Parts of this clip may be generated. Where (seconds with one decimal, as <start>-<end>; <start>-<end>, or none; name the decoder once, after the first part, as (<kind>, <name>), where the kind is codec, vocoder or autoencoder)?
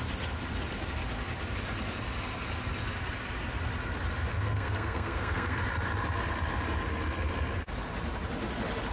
4.3-5.6 (codec, SNAC)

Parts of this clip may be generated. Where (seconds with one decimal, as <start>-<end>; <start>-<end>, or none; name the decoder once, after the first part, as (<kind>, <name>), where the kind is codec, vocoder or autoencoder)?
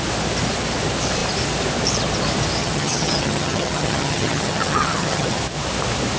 2.6-5.4 (vocoder, HiFi-GAN)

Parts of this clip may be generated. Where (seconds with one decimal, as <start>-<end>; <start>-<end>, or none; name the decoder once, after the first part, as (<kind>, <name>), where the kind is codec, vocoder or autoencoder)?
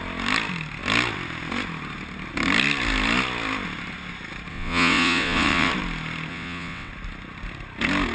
4.5-5.7 (vocoder, WaveNeXt); 6.3-6.9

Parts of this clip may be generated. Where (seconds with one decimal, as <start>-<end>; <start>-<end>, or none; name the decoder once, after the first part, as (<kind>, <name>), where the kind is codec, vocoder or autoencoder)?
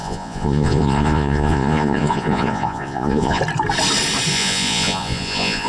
0.0-3.4 (vocoder, Vocos); 4.3-5.7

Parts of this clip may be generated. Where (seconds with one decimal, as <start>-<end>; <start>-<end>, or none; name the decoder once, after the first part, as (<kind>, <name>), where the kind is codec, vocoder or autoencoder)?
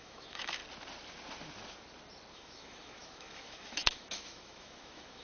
0.0-0.6 (autoencoder, DAC-VAE); 2.3-5.2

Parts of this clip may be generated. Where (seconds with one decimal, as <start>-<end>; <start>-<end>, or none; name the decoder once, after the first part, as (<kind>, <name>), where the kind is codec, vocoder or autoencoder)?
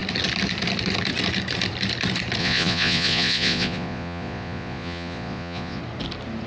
2.4-5.8 (vocoder, Vocos)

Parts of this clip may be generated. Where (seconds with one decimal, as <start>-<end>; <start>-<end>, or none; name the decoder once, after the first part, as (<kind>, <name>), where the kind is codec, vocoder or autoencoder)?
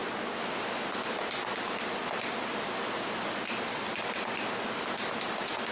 none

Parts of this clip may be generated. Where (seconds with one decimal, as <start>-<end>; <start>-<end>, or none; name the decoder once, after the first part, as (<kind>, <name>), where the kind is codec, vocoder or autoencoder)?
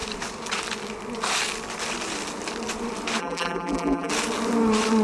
3.2-4.1 (vocoder, BigVGAN v2)